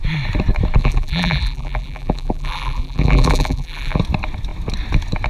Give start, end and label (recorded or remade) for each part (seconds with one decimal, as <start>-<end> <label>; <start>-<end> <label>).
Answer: 0.0-0.8 recorded; 0.8-4.0 remade; 4.0-5.3 recorded